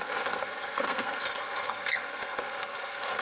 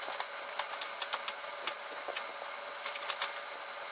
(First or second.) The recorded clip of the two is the second